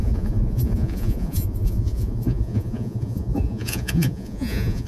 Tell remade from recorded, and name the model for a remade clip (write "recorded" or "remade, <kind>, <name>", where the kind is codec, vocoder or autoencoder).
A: remade, vocoder, Vocos